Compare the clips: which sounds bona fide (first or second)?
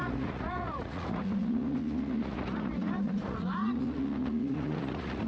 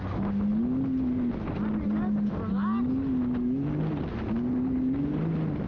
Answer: second